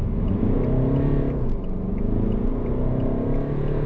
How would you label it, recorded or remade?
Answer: recorded